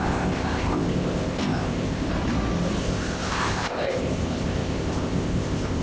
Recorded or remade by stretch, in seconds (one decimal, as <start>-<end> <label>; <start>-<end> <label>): 0.0-2.1 remade; 2.1-2.8 recorded; 2.8-5.8 remade

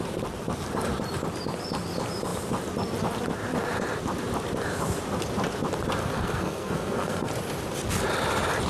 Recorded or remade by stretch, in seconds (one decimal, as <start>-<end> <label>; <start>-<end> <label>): 0.0-6.0 recorded; 6.0-7.3 remade; 7.3-8.7 recorded

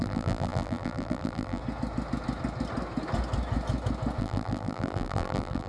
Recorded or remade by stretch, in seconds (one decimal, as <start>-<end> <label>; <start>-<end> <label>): 0.0-1.6 remade; 1.6-4.2 recorded; 4.2-5.7 remade

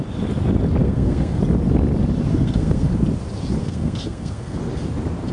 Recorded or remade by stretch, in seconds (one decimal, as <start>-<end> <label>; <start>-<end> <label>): 0.0-0.8 recorded; 0.8-1.4 remade; 1.4-2.3 recorded; 2.3-2.9 remade; 2.9-3.6 recorded; 3.6-4.6 remade; 4.6-5.3 recorded

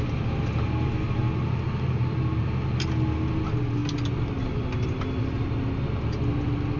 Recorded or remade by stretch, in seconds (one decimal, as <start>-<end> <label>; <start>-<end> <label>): 0.0-6.8 recorded

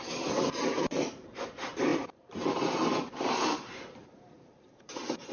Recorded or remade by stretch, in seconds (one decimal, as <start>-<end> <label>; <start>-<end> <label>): 0.0-1.9 recorded; 1.9-5.3 remade

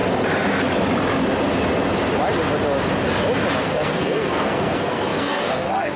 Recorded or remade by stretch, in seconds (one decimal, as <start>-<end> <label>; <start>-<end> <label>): 0.0-3.6 recorded; 3.6-6.0 remade